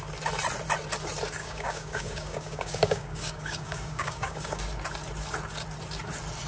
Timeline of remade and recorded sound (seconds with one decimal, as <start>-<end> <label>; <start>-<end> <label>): 0.0-1.4 recorded; 1.4-4.6 remade; 4.6-6.5 recorded